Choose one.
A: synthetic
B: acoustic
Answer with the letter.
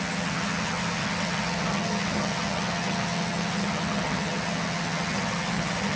A